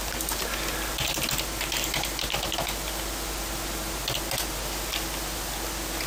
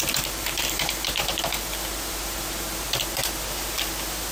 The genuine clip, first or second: first